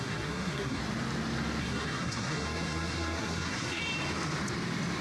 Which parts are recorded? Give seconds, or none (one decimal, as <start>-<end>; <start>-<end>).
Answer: 0.8-1.6; 3.8-5.0